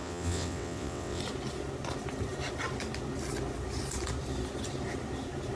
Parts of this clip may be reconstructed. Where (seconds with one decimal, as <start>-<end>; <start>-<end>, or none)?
0.0-1.2